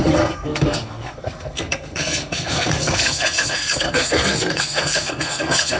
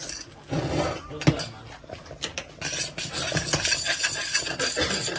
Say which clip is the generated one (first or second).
first